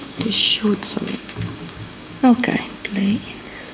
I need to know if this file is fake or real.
fake